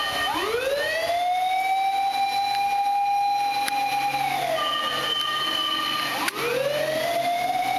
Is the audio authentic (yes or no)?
yes